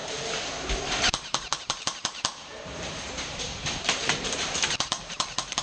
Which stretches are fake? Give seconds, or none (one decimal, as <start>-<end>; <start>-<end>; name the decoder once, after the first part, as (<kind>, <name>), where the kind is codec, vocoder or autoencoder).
0.0-5.6 (vocoder, BigVGAN v2)